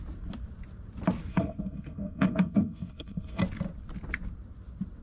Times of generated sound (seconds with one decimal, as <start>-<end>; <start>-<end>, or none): 1.3-3.4